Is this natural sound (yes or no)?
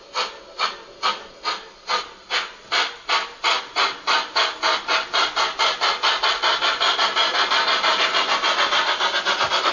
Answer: yes